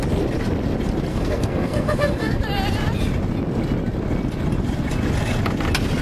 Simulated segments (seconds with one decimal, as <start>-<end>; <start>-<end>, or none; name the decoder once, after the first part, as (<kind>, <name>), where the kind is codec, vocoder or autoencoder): 1.1-2.4 (codec, SNAC)